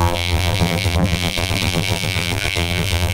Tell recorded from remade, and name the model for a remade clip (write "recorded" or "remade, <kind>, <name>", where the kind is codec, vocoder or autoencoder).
remade, vocoder, BigVGAN v2